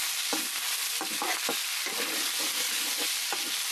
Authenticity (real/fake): real